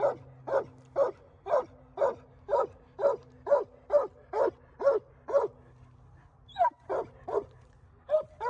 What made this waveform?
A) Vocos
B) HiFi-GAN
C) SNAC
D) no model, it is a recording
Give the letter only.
D